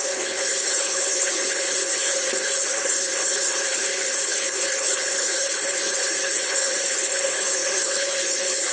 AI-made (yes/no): yes